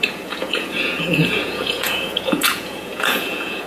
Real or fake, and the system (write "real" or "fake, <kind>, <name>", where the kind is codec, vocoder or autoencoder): fake, vocoder, Vocos